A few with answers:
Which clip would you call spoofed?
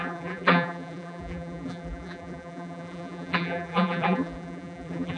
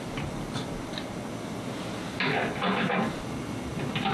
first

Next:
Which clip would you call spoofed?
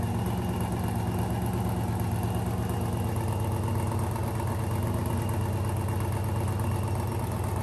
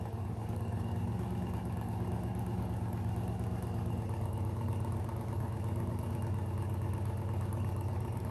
second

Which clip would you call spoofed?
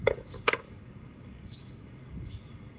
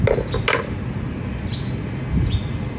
first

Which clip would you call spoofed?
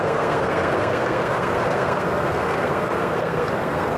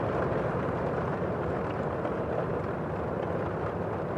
first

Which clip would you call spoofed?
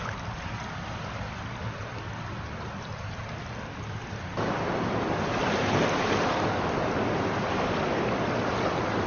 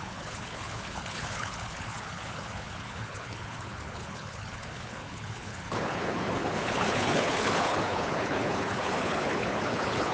second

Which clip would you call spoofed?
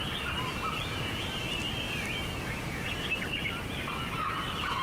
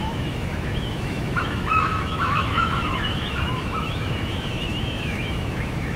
second